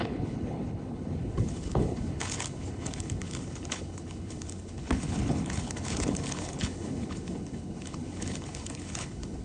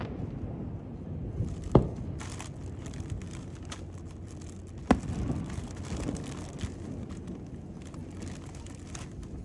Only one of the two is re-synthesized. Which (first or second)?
first